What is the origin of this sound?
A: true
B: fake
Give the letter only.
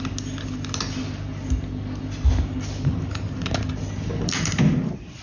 A